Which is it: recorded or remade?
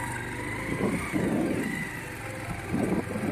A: recorded